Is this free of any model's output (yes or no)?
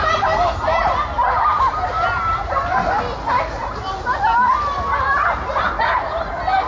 yes